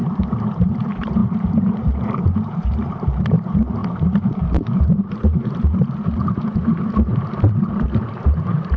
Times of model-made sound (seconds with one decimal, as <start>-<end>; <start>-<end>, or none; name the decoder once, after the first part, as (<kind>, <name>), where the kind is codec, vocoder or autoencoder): 0.0-6.2 (vocoder, BigVGAN v2); 7.2-8.8